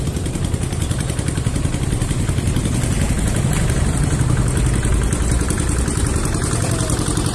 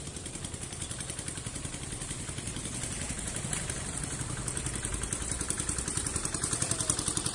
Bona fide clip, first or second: first